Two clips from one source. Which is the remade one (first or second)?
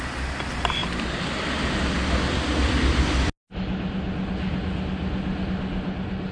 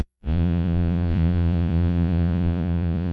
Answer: second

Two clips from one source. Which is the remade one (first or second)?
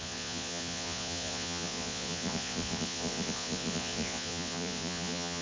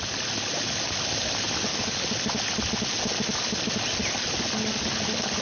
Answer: first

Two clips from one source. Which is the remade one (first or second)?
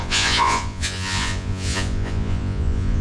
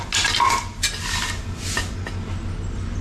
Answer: first